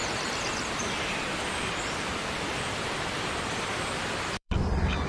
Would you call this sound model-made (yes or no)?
yes